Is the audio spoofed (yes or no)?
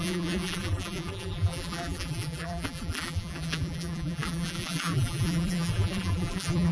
yes